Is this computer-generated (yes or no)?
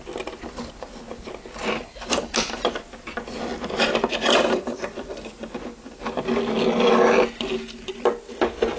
no